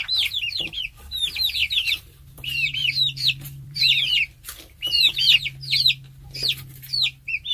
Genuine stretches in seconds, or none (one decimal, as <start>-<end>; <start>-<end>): 0.0-1.6; 3.8-4.9; 5.4-7.5